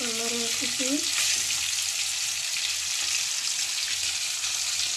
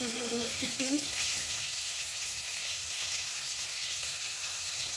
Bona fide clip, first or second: first